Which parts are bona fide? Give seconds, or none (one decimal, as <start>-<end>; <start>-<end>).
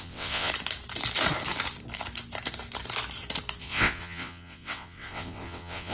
0.5-3.6